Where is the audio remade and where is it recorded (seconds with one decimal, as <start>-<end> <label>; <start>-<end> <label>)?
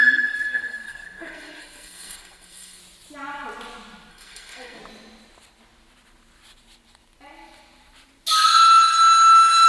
0.0-2.8 remade; 2.8-4.1 recorded; 4.1-4.8 remade; 4.8-9.7 recorded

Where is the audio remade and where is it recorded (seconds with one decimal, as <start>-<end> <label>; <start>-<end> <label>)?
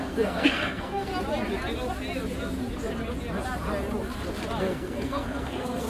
0.0-1.1 remade; 1.1-4.6 recorded; 4.6-5.9 remade